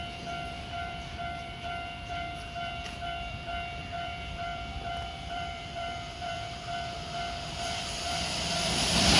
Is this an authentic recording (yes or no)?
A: no